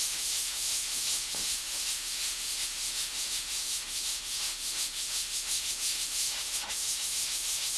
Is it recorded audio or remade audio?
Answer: remade